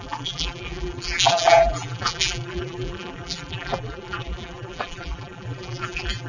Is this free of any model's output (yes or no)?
no